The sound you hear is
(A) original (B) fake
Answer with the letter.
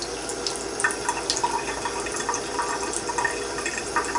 A